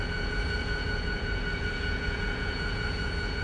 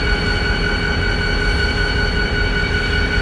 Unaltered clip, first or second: second